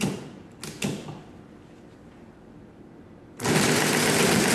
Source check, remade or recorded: recorded